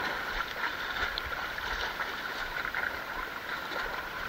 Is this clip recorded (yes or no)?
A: yes